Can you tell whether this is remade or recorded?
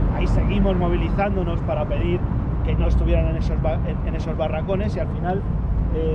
recorded